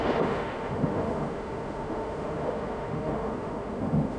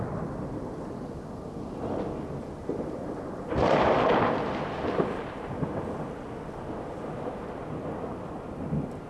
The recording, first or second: second